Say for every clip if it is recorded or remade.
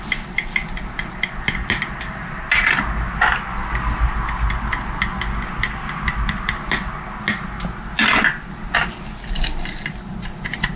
recorded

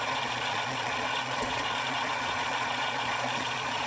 remade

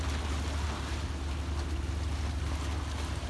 recorded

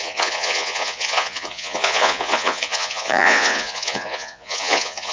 remade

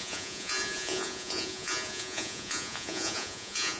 remade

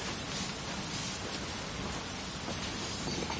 recorded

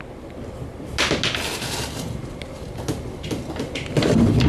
recorded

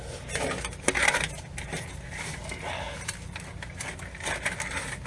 recorded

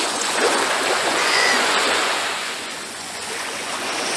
remade